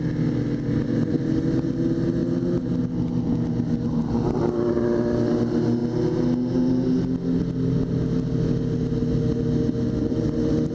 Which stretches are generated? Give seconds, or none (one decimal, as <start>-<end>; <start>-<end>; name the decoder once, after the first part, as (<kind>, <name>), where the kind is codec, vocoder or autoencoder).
none